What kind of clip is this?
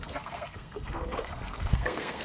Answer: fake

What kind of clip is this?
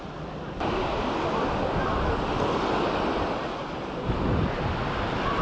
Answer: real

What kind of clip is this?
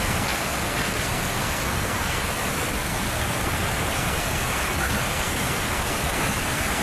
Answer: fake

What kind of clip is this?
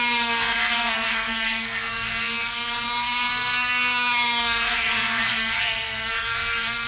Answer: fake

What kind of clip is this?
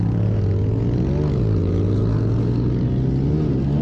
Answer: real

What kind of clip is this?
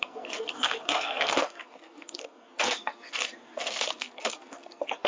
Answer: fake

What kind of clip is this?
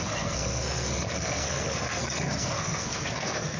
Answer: fake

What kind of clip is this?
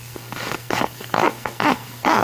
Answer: fake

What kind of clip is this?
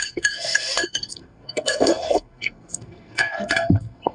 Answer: fake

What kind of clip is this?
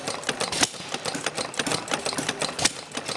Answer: real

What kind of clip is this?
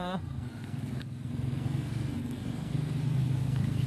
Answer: fake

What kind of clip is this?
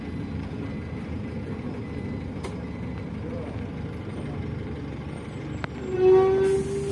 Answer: real